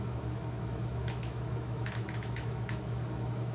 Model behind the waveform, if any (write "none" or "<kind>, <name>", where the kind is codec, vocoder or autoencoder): autoencoder, DAC-VAE